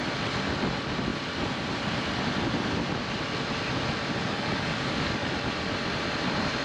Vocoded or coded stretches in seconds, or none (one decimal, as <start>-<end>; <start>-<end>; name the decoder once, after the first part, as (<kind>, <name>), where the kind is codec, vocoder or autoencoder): 4.2-5.3 (codec, DAC)